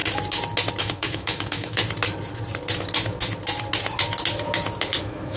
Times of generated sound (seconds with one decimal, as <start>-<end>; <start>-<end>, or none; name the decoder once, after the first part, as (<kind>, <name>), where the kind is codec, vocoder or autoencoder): 0.8-1.8 (autoencoder, DAC-VAE); 5.0-5.4